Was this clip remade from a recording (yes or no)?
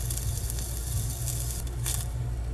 no